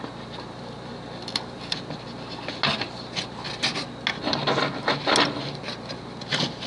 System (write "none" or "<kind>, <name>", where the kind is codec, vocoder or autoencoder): none